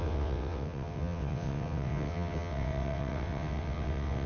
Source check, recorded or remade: remade